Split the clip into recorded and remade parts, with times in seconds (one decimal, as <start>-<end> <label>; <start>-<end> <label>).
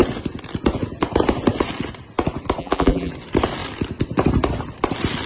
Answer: 0.0-2.6 recorded; 2.6-3.1 remade; 3.1-5.3 recorded